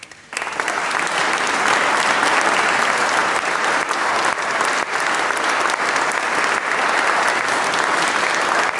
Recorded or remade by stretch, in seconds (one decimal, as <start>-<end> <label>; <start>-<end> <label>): 0.0-3.2 recorded; 3.2-4.7 remade; 4.7-8.8 recorded